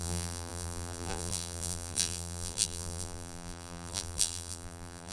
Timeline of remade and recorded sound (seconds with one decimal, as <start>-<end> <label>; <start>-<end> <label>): 0.0-5.1 remade